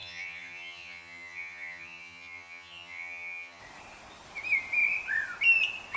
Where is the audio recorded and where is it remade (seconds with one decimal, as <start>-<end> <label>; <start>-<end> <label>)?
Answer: 0.0-3.6 remade; 3.6-6.0 recorded